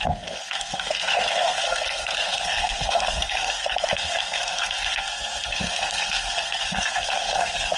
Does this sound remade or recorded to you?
remade